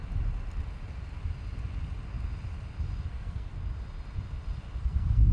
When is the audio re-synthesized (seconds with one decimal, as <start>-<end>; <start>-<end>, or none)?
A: 3.1-3.5; 4.8-5.3